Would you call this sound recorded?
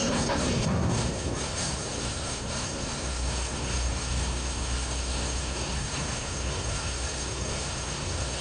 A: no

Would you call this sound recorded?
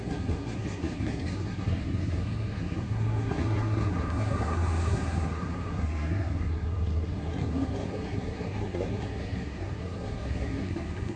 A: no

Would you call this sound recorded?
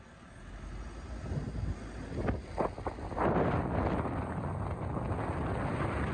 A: yes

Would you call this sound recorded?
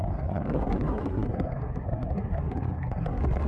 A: no